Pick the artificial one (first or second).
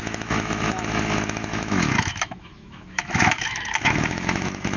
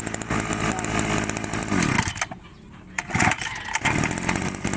first